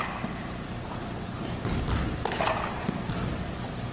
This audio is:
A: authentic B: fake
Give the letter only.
A